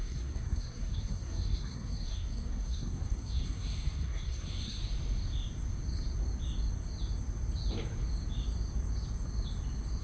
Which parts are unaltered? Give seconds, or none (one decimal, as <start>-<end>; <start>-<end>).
4.8-10.0